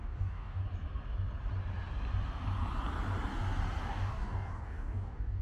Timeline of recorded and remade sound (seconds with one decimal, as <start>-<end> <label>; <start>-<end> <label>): 0.0-0.6 remade; 0.6-3.8 recorded; 3.8-5.4 remade